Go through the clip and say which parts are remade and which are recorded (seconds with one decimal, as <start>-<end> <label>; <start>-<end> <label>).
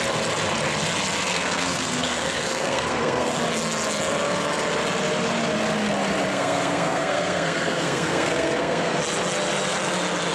0.0-1.3 recorded; 1.3-3.4 remade; 3.4-6.3 recorded; 6.3-9.0 remade; 9.0-10.3 recorded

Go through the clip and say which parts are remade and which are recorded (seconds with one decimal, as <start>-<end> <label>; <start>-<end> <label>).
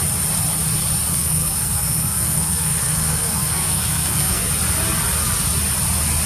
0.0-1.1 recorded; 1.1-4.5 remade; 4.5-6.3 recorded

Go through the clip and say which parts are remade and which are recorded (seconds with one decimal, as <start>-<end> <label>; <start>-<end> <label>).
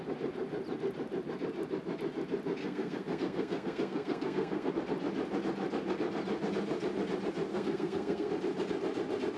0.0-2.6 recorded; 2.6-4.7 remade; 4.7-7.5 recorded; 7.5-8.3 remade; 8.3-9.4 recorded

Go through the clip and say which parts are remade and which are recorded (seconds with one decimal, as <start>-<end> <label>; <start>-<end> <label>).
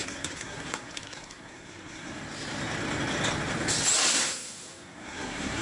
0.0-2.2 remade; 2.2-4.1 recorded; 4.1-5.6 remade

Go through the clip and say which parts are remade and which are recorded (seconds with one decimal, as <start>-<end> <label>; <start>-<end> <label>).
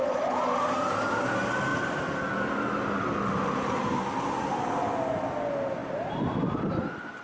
0.0-7.2 recorded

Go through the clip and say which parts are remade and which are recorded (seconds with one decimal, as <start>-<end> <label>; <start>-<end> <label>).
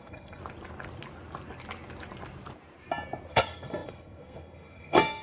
0.0-0.4 remade; 0.4-3.3 recorded; 3.3-5.2 remade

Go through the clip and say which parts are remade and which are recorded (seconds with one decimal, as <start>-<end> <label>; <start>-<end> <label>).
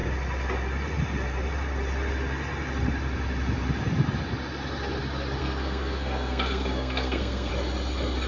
0.0-5.4 recorded; 5.4-7.5 remade; 7.5-8.3 recorded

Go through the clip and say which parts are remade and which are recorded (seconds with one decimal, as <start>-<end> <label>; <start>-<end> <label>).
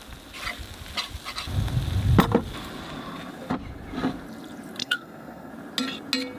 0.0-4.8 recorded; 4.8-5.5 remade; 5.5-6.4 recorded